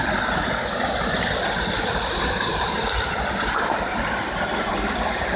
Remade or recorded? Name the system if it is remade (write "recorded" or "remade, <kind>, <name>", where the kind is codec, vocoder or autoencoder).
remade, vocoder, BigVGAN v2